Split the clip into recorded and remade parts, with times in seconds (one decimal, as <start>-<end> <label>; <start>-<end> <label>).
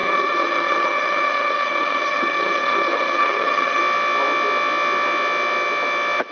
0.0-3.8 remade; 3.8-6.3 recorded